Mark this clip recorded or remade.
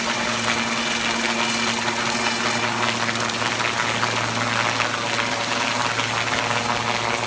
recorded